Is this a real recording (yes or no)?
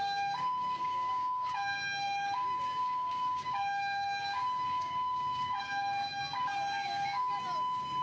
no